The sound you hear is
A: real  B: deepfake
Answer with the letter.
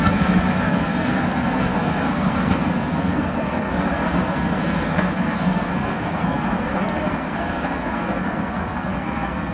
B